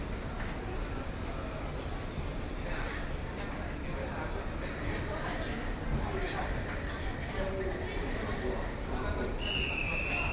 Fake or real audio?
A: real